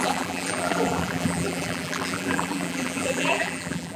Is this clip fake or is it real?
fake